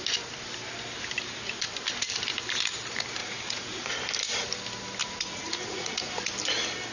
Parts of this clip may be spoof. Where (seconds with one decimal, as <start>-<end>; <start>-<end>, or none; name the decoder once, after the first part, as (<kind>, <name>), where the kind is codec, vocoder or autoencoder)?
3.2-3.9 (vocoder, Vocos); 5.0-6.1